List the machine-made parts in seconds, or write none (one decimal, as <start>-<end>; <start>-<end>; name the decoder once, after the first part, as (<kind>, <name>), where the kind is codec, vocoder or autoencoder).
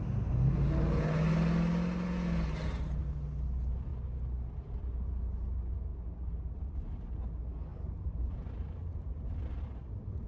7.7-9.6 (vocoder, BigVGAN v2)